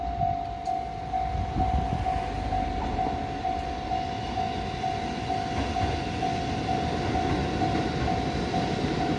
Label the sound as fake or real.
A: real